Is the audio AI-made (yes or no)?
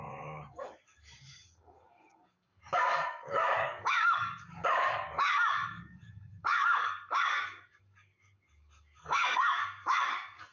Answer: yes